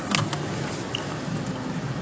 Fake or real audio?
real